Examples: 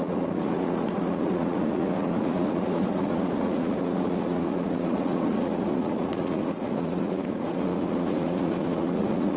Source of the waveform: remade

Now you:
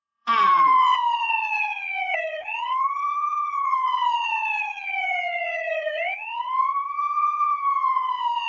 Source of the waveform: remade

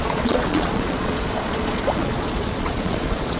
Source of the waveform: remade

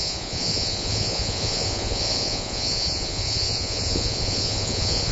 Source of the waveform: remade